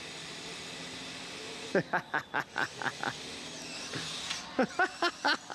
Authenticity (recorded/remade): recorded